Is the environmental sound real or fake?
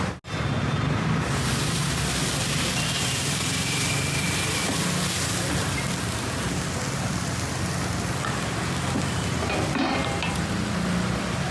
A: real